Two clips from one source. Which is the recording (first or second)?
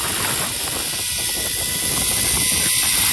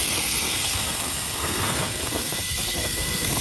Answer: first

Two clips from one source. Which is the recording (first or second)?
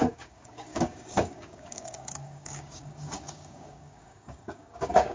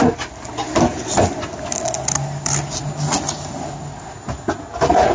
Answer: second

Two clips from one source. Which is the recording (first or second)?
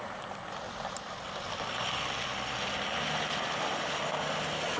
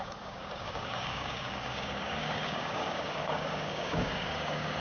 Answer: first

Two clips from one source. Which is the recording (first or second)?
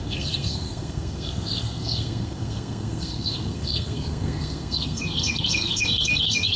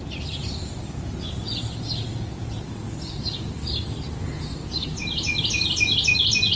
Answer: second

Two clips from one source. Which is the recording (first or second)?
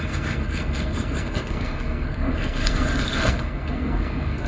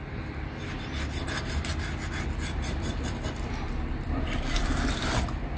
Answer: second